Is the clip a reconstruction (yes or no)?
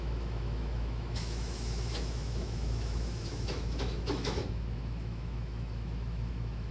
yes